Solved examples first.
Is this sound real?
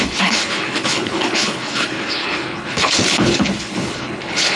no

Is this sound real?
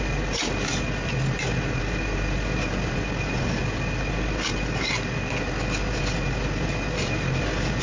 yes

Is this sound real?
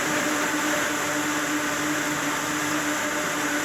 yes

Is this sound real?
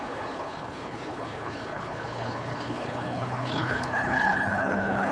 no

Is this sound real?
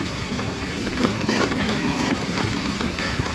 no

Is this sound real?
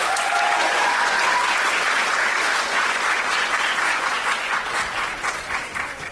no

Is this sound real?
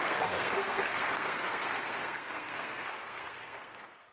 no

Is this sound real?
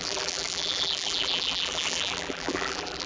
no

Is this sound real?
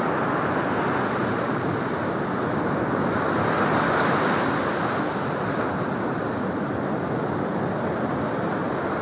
yes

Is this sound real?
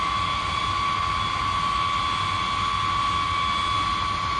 yes